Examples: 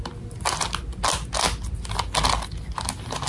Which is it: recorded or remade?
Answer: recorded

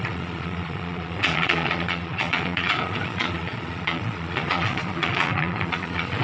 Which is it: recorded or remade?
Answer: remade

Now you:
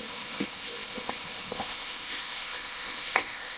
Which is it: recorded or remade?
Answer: remade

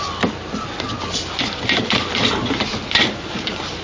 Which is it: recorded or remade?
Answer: recorded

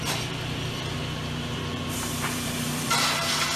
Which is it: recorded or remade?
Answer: remade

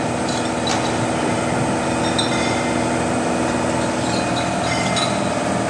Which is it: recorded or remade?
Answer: recorded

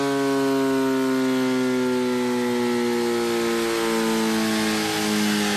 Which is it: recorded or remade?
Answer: recorded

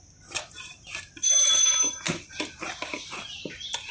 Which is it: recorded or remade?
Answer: recorded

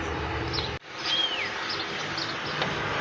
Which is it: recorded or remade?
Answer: recorded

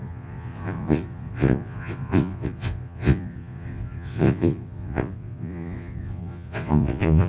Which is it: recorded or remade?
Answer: remade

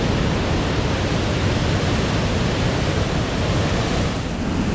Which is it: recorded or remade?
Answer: recorded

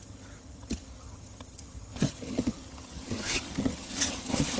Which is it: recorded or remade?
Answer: remade